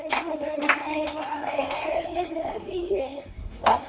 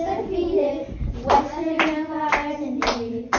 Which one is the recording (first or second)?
second